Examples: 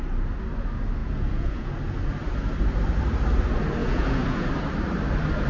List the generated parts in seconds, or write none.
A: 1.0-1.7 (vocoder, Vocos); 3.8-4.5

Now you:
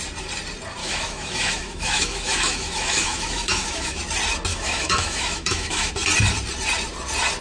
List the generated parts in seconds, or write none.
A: 0.8-4.0 (autoencoder, DAC-VAE); 4.5-5.9